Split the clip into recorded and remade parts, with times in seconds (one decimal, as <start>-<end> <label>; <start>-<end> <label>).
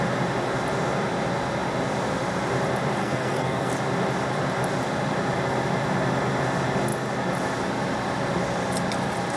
0.0-3.0 recorded; 3.0-3.7 remade; 3.7-9.4 recorded